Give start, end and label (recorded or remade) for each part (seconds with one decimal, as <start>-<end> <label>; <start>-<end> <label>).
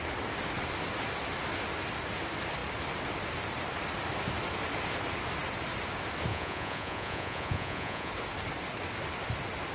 0.0-6.3 recorded; 6.3-8.1 remade; 8.1-9.7 recorded